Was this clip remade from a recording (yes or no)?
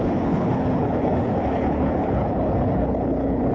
yes